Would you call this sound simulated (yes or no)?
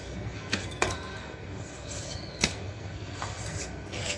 yes